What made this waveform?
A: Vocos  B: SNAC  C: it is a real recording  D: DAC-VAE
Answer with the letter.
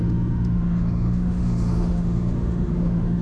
D